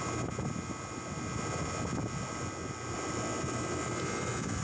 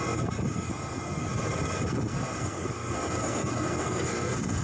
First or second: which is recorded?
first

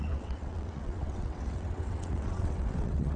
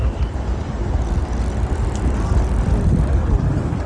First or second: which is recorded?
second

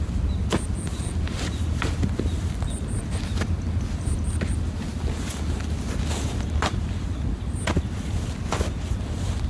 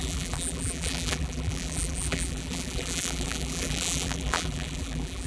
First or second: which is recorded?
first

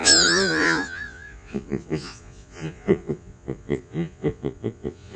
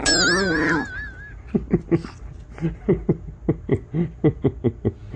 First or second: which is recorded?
second